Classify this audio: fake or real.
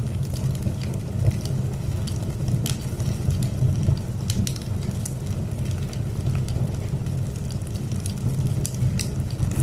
real